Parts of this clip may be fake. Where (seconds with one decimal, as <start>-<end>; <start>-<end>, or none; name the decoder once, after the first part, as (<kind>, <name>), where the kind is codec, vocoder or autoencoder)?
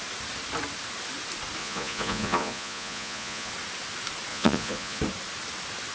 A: 1.6-3.5 (vocoder, Vocos); 4.3-5.0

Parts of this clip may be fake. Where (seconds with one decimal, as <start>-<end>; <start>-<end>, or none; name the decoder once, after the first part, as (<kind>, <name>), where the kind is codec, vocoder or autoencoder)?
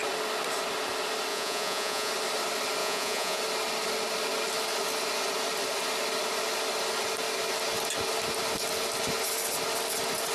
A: 1.3-2.1 (vocoder, Vocos); 2.8-3.4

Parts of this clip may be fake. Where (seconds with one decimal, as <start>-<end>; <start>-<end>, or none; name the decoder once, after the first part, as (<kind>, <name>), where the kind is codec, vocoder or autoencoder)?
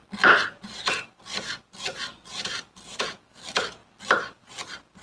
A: none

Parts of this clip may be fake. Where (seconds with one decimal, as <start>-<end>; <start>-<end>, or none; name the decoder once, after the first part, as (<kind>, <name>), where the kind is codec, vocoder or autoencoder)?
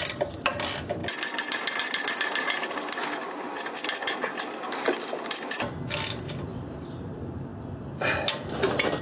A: none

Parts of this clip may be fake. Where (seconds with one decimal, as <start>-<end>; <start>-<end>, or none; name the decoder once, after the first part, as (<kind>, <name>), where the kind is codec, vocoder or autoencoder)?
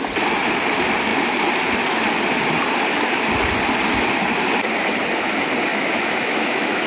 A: 5.7-6.9 (autoencoder, DAC-VAE)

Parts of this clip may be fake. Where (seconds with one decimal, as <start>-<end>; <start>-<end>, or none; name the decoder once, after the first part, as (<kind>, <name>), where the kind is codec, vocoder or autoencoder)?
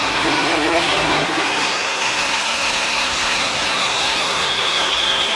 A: 0.0-5.4 (codec, SNAC)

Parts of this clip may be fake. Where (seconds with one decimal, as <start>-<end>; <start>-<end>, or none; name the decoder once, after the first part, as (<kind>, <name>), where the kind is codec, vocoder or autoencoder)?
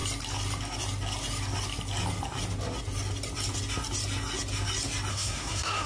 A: 5.1-5.9 (codec, SNAC)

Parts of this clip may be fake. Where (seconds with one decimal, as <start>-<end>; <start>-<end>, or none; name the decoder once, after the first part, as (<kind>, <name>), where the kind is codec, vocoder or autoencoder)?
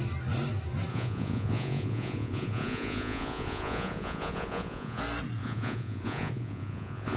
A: 0.9-5.0 (vocoder, Vocos); 5.4-7.2